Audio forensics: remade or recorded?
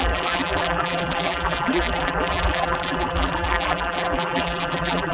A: remade